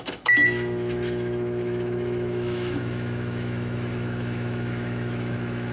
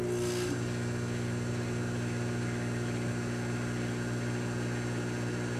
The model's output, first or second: first